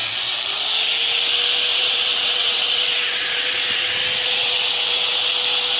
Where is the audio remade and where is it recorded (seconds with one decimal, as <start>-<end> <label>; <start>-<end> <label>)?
0.0-1.7 recorded; 1.7-5.2 remade; 5.2-5.8 recorded